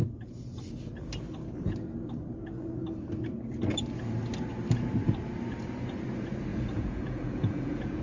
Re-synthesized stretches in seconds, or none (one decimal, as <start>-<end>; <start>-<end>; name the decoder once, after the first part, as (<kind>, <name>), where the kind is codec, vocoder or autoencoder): 6.5-8.0 (vocoder, Vocos)